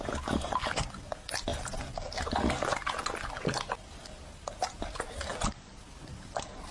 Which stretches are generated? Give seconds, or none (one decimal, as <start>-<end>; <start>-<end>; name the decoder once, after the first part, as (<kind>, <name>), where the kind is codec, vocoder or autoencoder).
none